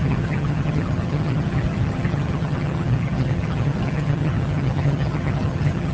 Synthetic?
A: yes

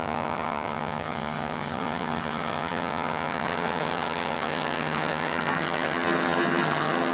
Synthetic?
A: yes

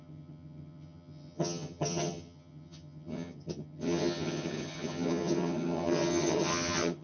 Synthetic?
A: yes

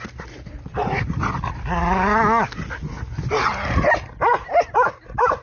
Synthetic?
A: no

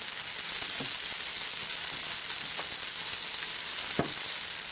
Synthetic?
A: no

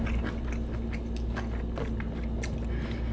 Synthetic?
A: no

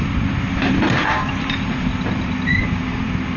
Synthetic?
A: no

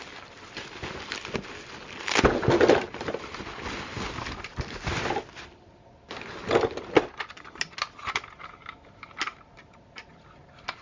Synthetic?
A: no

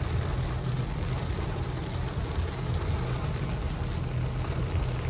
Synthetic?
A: no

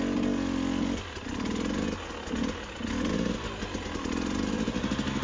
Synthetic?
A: no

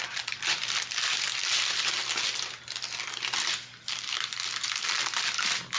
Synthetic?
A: no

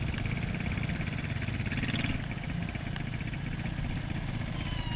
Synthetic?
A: no